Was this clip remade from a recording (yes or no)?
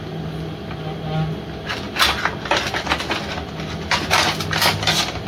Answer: no